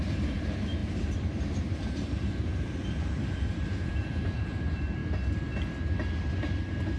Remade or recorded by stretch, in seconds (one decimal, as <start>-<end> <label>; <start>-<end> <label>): 0.0-5.0 remade; 5.0-7.0 recorded